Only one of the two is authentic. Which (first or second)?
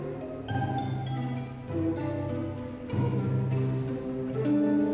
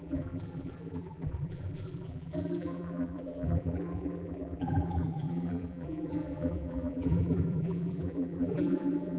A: first